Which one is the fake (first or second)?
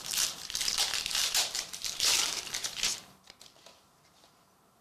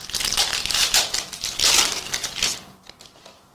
first